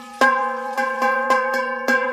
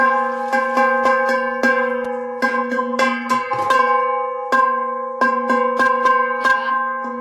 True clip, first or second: second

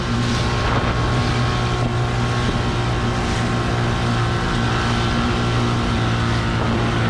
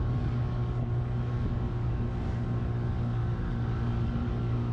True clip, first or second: first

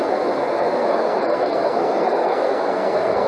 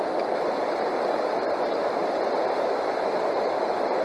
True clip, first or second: second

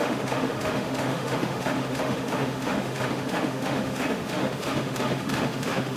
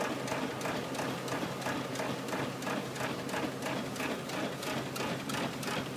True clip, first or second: second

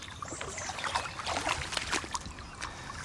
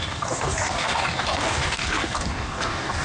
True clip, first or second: first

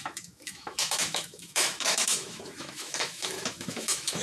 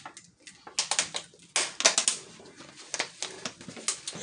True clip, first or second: second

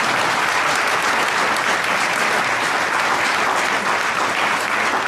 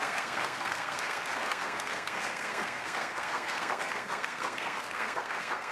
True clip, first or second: first